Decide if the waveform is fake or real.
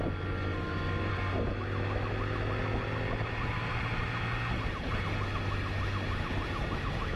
real